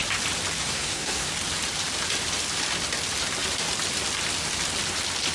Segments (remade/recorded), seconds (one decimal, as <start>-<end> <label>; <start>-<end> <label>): 0.0-0.6 recorded; 0.6-1.3 remade; 1.3-5.3 recorded